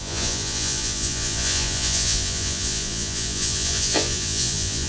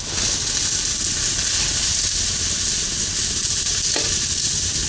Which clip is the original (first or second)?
second